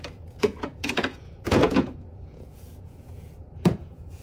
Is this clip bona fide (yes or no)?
no